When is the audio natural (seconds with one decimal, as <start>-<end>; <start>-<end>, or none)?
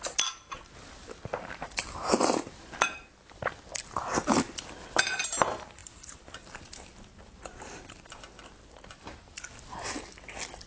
0.0-1.3; 2.2-5.8; 8.2-10.7